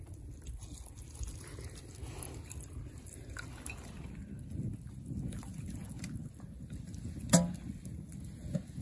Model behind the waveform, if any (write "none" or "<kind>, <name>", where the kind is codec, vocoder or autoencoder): none